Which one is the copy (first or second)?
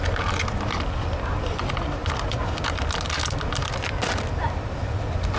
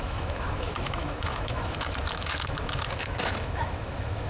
second